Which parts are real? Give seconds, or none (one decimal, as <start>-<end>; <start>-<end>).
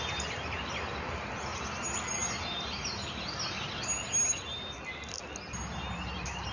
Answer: 0.0-6.5